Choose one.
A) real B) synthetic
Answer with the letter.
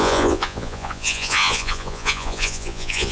B